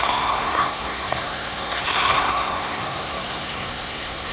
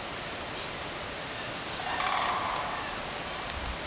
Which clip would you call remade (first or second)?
first